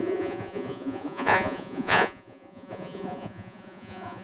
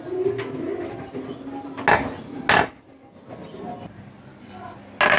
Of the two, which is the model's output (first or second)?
first